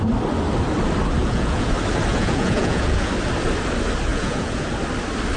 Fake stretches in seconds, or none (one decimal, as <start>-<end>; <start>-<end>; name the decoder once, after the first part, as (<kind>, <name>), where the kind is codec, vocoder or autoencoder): 1.2-1.7 (vocoder, Vocos); 2.1-3.1; 4.1-4.7